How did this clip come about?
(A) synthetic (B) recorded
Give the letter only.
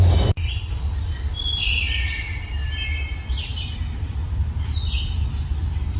B